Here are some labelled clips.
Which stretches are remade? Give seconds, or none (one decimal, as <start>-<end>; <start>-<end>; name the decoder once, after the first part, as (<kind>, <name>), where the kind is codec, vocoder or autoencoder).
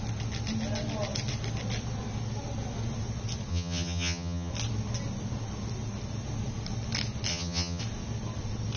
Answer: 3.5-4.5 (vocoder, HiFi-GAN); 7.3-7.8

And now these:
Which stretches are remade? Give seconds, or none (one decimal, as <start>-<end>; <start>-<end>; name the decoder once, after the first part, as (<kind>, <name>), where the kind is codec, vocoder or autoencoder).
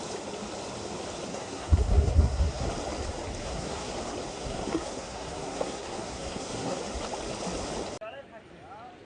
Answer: 1.3-2.7 (codec, SNAC); 3.4-3.9; 4.3-6.8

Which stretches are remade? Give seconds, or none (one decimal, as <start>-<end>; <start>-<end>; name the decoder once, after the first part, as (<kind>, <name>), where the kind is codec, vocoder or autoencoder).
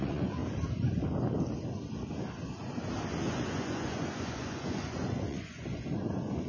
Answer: 0.0-0.4 (vocoder, Vocos); 3.3-6.5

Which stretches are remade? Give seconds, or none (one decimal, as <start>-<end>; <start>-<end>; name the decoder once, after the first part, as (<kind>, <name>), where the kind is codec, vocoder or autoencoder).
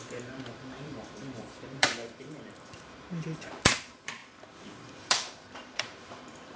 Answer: 0.0-4.2 (vocoder, BigVGAN v2); 5.0-6.6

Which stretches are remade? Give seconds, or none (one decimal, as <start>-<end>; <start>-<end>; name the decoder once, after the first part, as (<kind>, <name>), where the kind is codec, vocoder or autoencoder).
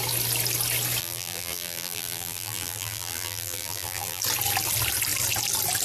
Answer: 1.0-4.2 (vocoder, BigVGAN v2)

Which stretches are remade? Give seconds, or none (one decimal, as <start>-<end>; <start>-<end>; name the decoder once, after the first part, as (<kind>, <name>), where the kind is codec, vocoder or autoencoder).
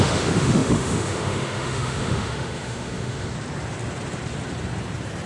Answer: 0.0-3.3 (autoencoder, DAC-VAE)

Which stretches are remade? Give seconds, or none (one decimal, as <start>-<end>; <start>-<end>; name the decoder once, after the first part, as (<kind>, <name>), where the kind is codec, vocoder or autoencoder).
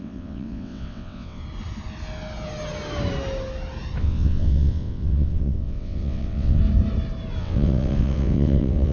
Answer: 0.0-1.4 (vocoder, WaveNeXt); 4.0-6.6; 7.4-8.9